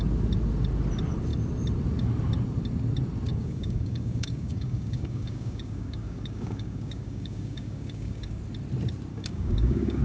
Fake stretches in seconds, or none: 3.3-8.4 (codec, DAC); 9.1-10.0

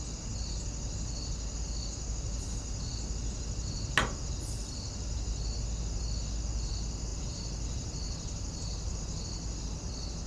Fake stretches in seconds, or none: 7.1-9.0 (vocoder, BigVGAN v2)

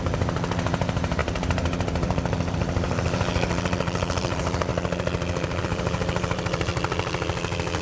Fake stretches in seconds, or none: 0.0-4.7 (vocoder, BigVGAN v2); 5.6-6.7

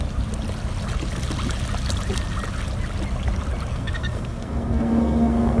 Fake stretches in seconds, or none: 3.7-5.6 (codec, SNAC)

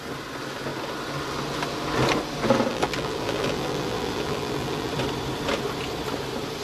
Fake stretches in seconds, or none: 2.7-4.9 (vocoder, BigVGAN v2)